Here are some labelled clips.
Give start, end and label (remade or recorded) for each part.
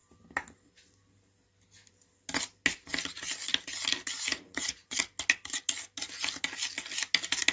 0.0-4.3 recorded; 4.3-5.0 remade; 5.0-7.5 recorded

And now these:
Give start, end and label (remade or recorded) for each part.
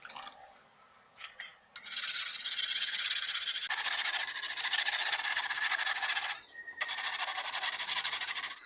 0.0-8.7 recorded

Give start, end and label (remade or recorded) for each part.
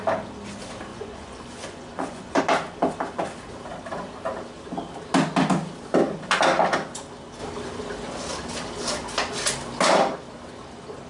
0.0-0.9 recorded; 0.9-2.4 remade; 2.4-11.1 recorded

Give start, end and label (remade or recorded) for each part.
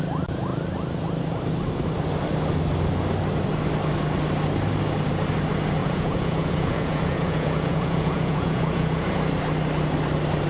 0.0-5.8 recorded; 5.8-9.1 remade; 9.1-10.5 recorded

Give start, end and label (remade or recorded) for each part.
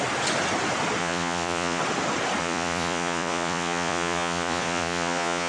0.0-1.0 recorded; 1.0-1.8 remade; 1.8-2.4 recorded; 2.4-5.5 remade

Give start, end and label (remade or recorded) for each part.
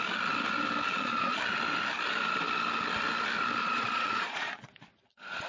0.0-0.9 recorded; 0.9-1.4 remade; 1.4-3.6 recorded; 3.6-5.5 remade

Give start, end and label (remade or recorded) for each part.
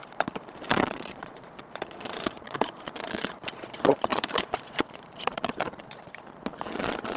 0.0-7.2 remade